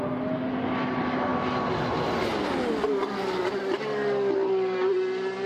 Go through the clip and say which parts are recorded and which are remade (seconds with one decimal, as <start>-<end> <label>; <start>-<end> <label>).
0.0-5.5 recorded